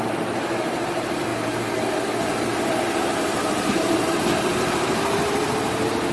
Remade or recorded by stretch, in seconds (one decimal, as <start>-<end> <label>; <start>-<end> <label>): 0.0-1.3 remade; 1.3-3.7 recorded; 3.7-6.1 remade